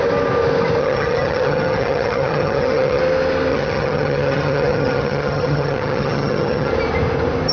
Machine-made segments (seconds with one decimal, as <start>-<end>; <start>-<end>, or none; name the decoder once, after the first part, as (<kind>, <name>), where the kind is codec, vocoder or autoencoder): 0.8-3.0 (vocoder, HiFi-GAN); 3.5-6.7